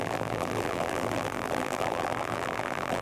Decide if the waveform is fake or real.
fake